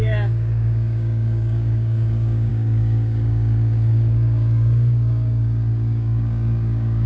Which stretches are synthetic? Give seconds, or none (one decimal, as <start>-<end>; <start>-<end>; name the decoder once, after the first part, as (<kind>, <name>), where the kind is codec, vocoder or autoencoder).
0.0-7.1 (codec, DAC)